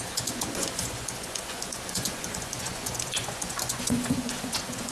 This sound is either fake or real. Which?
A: fake